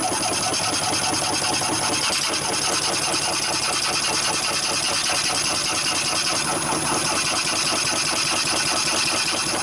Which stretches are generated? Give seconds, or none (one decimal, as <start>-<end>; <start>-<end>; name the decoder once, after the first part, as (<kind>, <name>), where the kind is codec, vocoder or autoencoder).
none

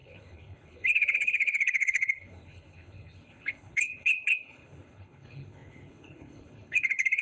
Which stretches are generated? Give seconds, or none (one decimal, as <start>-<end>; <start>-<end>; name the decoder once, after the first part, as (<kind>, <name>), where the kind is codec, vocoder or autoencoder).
0.0-7.2 (codec, HILCodec)

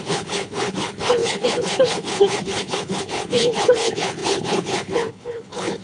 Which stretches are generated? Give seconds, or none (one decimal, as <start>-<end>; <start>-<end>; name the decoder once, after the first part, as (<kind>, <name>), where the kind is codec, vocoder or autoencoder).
0.0-5.8 (codec, HILCodec)

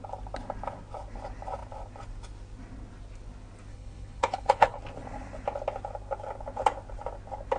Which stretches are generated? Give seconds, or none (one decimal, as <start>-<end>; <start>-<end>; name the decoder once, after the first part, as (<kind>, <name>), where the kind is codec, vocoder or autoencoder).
3.7-4.8 (codec, HILCodec)

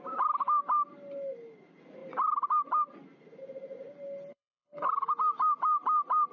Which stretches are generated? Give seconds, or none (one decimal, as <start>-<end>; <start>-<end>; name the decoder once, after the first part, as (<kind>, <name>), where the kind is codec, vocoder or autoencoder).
4.3-4.9 (codec, HILCodec)

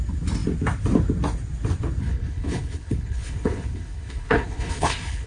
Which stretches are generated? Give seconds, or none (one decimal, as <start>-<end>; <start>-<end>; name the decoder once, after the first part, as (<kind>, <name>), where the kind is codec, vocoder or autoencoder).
2.0-5.3 (codec, HILCodec)

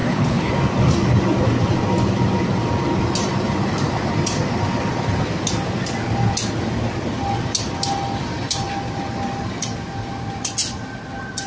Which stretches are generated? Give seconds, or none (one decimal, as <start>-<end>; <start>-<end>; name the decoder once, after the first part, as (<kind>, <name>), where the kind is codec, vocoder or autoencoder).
0.0-0.5 (codec, HILCodec)